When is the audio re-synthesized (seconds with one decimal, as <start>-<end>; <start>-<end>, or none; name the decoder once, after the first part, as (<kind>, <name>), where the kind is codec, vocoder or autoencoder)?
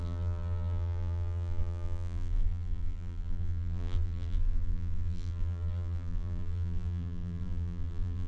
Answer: 0.0-8.3 (vocoder, BigVGAN v2)